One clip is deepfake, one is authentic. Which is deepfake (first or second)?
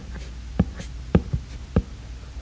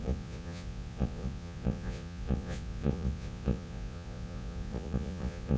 second